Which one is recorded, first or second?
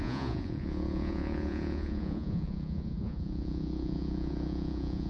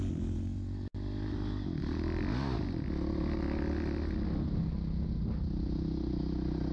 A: second